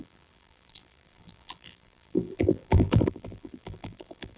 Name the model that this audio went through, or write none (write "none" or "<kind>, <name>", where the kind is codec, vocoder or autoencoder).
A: vocoder, BigVGAN v2